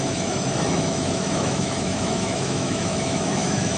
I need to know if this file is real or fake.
fake